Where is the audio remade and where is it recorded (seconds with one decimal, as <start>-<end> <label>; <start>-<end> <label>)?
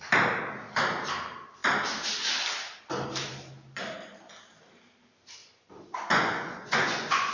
0.0-5.4 recorded; 5.4-7.3 remade